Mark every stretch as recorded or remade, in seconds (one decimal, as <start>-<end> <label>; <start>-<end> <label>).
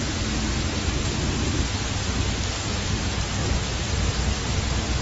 0.0-5.0 recorded